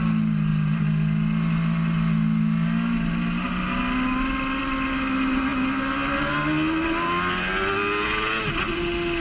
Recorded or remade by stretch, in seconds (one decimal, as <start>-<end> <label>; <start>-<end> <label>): 0.0-9.2 recorded

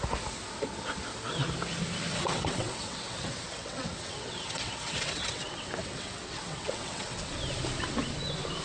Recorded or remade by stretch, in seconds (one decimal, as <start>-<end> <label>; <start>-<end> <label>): 0.0-2.1 recorded; 2.1-7.3 remade; 7.3-8.6 recorded

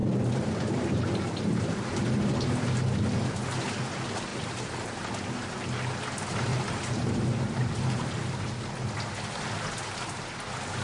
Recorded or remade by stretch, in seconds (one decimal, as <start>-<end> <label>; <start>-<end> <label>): 0.0-2.3 remade; 2.3-4.3 recorded; 4.3-5.0 remade; 5.0-6.5 recorded; 6.5-8.6 remade; 8.6-10.8 recorded

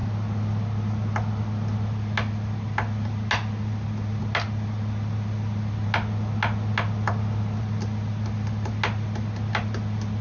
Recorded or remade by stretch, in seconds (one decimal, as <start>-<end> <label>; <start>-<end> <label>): 0.0-10.2 recorded

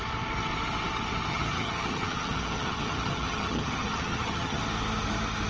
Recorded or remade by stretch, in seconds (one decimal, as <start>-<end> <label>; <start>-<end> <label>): 0.0-1.3 recorded; 1.3-4.6 remade; 4.6-5.5 recorded

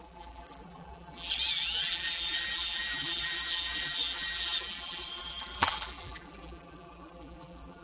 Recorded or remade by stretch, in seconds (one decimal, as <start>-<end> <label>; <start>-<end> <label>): 0.0-7.8 remade

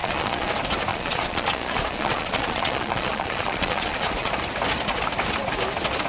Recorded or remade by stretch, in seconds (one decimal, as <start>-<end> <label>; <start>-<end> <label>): 0.0-0.5 remade; 0.5-0.9 recorded; 0.9-4.3 remade; 4.3-6.1 recorded